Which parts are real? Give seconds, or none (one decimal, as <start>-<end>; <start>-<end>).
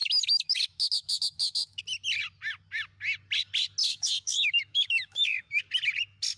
1.8-3.8; 5.6-6.4